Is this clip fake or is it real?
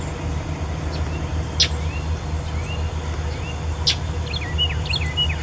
real